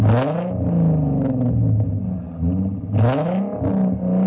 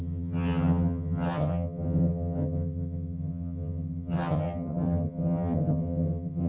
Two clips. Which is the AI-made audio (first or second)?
second